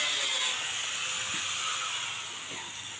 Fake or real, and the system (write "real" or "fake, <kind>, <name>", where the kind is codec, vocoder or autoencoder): real